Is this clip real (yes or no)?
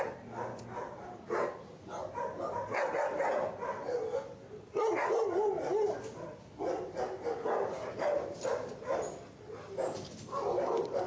yes